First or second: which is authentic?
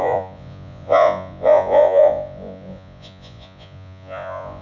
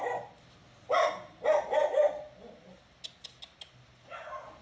second